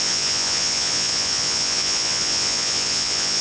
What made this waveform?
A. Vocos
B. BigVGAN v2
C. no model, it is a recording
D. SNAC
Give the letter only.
A